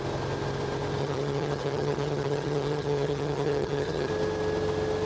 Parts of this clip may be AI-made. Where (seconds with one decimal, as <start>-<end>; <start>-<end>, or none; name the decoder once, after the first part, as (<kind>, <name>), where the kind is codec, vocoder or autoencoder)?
1.0-4.1 (vocoder, HiFi-GAN)